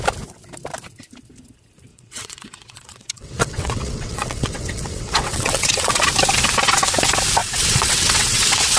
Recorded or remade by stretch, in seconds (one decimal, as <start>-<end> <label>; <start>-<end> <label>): 0.0-1.9 recorded; 1.9-6.0 remade; 6.0-7.4 recorded; 7.4-8.8 remade

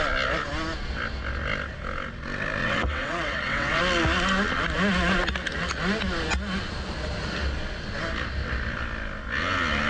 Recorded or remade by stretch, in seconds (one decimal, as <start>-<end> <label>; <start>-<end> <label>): 0.0-2.6 recorded; 2.6-3.8 remade; 3.8-9.9 recorded

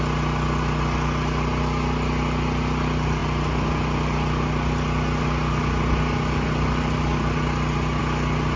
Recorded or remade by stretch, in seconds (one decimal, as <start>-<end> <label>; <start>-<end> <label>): 0.0-8.6 recorded